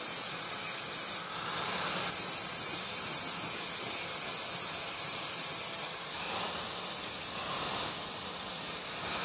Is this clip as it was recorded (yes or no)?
yes